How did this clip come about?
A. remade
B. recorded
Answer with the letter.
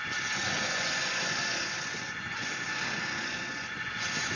A